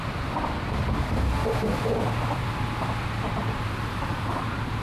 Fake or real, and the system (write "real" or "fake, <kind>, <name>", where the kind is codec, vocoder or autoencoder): real